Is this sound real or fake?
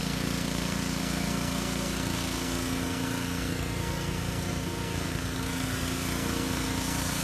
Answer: fake